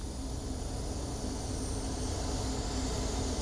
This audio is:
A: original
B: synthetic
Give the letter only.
A